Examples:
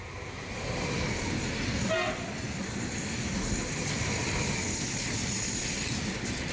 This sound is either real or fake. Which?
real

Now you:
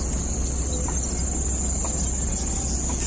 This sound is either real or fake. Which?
real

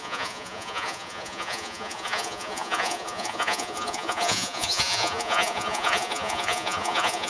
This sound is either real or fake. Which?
fake